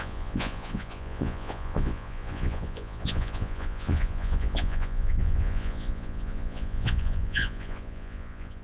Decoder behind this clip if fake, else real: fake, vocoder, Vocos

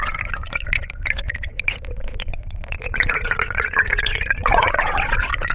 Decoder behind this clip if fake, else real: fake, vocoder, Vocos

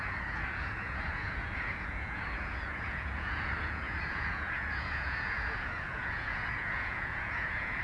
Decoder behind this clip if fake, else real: fake, vocoder, Vocos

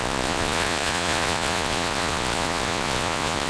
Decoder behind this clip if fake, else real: fake, vocoder, Vocos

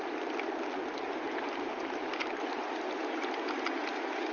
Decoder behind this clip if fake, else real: real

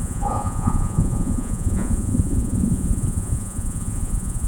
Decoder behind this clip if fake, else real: fake, vocoder, Vocos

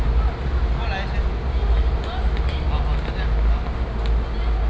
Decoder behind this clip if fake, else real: real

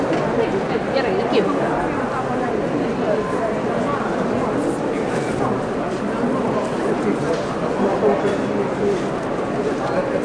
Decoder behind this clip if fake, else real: real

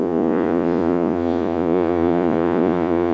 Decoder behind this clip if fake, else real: fake, vocoder, Vocos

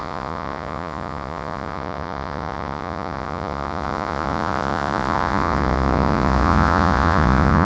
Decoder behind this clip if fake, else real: fake, vocoder, Vocos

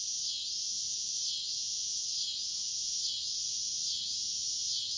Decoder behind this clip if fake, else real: real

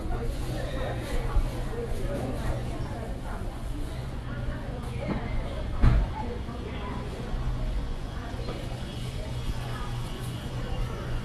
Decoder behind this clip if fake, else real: fake, vocoder, Vocos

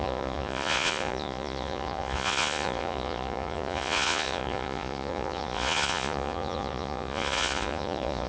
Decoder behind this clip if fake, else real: fake, vocoder, Vocos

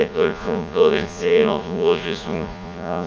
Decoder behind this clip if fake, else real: fake, vocoder, Vocos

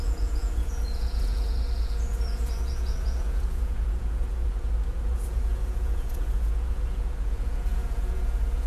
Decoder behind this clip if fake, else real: fake, vocoder, Vocos